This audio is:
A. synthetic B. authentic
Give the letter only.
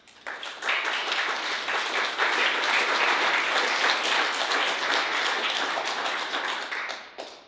B